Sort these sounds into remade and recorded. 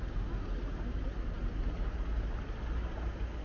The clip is recorded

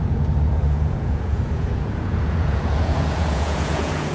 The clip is remade